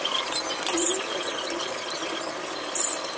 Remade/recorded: recorded